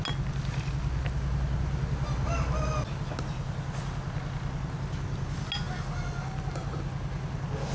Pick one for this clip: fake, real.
real